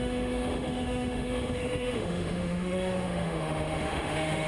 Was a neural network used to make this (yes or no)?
yes